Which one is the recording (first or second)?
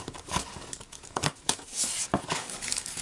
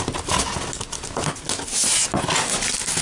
second